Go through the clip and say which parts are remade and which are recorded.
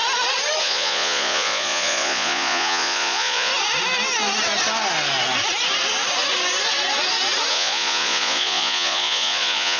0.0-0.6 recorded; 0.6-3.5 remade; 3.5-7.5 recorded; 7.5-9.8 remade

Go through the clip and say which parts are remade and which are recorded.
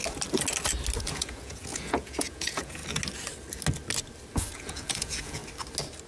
0.0-1.0 recorded; 1.0-2.8 remade; 2.8-4.5 recorded; 4.5-5.4 remade; 5.4-6.1 recorded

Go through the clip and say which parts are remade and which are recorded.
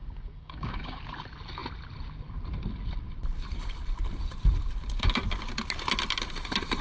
0.0-1.0 remade; 1.0-6.8 recorded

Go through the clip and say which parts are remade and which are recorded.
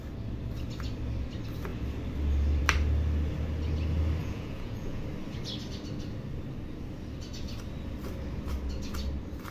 0.0-4.2 recorded; 4.2-5.0 remade; 5.0-9.5 recorded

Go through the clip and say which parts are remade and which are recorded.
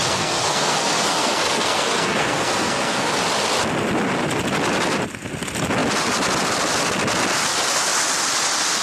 0.0-3.1 remade; 3.1-8.8 recorded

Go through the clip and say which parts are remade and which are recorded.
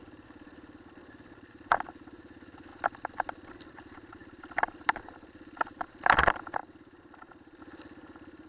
0.0-2.7 recorded; 2.7-3.7 remade; 3.7-4.2 recorded; 4.2-6.0 remade; 6.0-6.6 recorded; 6.6-7.6 remade; 7.6-8.5 recorded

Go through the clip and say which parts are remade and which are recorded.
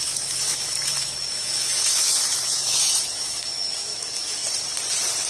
0.0-4.4 remade; 4.4-5.3 recorded